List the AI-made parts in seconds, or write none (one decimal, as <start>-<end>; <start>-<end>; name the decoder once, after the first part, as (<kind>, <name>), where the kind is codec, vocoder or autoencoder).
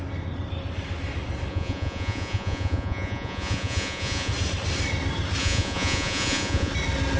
1.5-4.3 (vocoder, Vocos); 5.4-6.7